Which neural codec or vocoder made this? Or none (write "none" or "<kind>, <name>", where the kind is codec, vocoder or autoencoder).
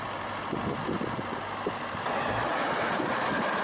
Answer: none